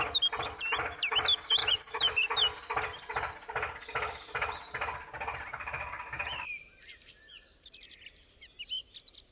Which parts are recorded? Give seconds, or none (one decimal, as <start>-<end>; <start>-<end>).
0.0-1.6; 2.2-9.3